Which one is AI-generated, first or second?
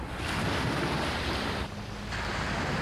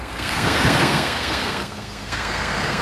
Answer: second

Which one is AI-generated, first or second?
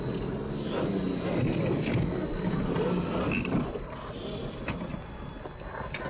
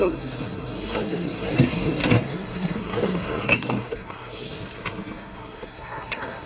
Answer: second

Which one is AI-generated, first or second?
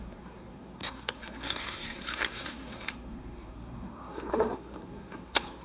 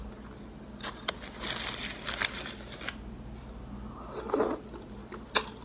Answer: first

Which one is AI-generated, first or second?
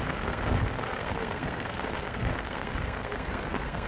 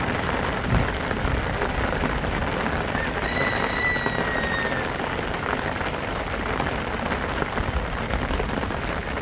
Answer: first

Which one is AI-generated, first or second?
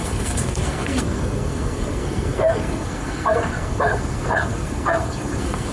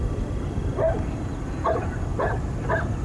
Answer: first